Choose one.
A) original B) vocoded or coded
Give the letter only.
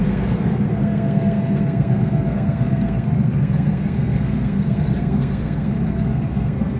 B